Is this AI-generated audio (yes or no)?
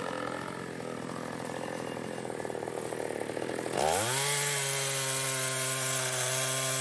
no